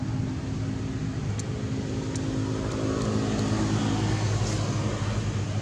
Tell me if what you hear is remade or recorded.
recorded